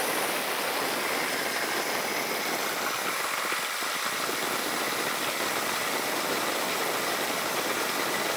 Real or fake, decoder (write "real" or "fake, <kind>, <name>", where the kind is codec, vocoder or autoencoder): real